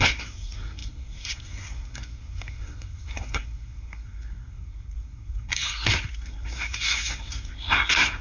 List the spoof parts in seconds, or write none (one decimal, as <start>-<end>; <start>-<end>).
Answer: 0.0-8.2